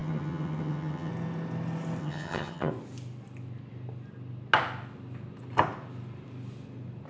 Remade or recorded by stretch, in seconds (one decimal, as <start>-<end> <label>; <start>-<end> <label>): 0.0-1.1 remade; 1.1-2.0 recorded; 2.0-2.7 remade; 2.7-7.1 recorded